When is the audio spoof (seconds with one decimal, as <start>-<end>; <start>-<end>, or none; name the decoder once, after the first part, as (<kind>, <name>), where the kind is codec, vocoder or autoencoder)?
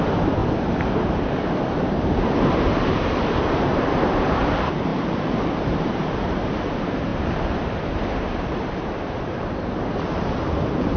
0.0-0.4 (vocoder, BigVGAN v2); 0.9-11.0